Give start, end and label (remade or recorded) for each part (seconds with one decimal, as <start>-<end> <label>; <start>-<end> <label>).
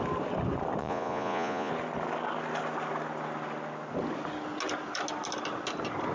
0.0-0.8 recorded; 0.8-1.7 remade; 1.7-6.1 recorded